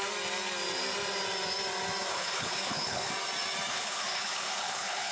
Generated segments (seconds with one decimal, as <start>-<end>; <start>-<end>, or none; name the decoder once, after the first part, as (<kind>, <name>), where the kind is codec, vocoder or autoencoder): 2.1-3.1 (codec, HILCodec); 3.7-5.1